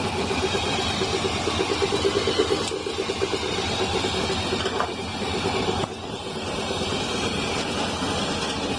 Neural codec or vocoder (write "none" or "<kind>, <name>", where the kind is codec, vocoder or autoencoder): none